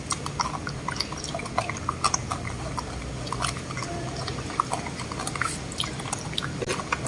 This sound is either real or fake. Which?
real